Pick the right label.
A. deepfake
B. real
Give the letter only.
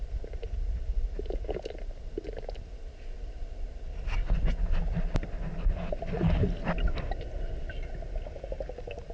B